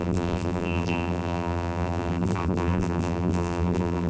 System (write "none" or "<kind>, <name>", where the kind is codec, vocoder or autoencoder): vocoder, BigVGAN v2